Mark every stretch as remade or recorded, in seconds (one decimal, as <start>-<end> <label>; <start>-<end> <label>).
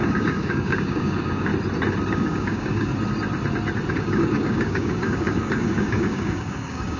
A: 0.0-1.5 remade; 1.5-2.1 recorded; 2.1-2.9 remade; 2.9-3.9 recorded; 3.9-7.0 remade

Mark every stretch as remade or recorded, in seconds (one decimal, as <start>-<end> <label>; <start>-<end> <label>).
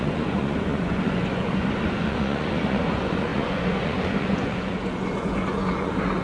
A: 0.0-6.2 remade